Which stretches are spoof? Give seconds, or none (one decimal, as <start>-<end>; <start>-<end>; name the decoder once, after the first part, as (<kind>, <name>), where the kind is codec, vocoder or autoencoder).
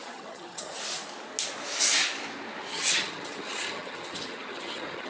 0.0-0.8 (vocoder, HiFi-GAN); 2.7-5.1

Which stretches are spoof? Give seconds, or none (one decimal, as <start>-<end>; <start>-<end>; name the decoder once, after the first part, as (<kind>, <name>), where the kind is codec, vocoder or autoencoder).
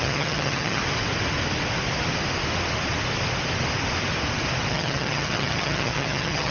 0.0-0.8 (vocoder, HiFi-GAN); 4.7-6.5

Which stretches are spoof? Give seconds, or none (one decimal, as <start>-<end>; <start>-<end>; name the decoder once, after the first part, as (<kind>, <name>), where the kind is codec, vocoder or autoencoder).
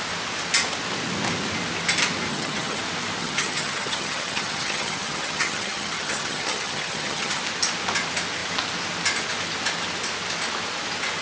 2.3-2.8 (vocoder, HiFi-GAN); 3.2-7.4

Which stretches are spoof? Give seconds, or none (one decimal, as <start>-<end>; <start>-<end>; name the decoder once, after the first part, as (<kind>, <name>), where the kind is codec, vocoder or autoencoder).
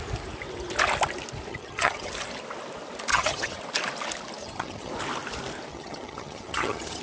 1.5-2.1 (vocoder, HiFi-GAN); 3.1-3.6; 4.4-4.9; 5.7-7.0